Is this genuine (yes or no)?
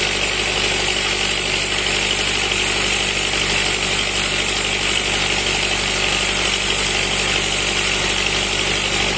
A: yes